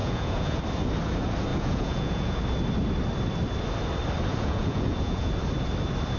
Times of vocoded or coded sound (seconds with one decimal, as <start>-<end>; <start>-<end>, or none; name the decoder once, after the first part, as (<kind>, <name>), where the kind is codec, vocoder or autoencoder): 0.0-0.6 (vocoder, Vocos); 1.5-2.4; 4.3-5.3